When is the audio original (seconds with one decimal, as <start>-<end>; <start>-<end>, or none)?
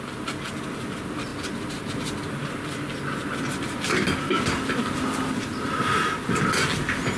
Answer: 0.0-7.2